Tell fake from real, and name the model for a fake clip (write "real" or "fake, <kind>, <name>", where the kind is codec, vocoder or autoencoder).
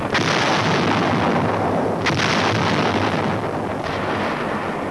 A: real